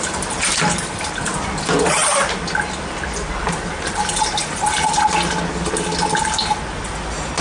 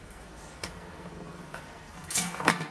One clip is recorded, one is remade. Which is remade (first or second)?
second